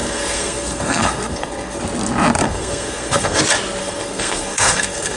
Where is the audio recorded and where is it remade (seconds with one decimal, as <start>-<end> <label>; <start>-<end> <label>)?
0.0-1.8 remade; 1.8-2.4 recorded; 2.4-3.4 remade; 3.4-3.8 recorded; 3.8-5.2 remade